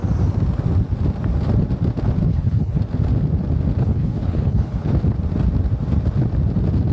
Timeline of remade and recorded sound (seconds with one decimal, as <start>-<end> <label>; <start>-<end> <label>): 0.0-2.3 recorded; 2.3-2.8 remade; 2.8-3.8 recorded; 3.8-4.9 remade; 4.9-6.9 recorded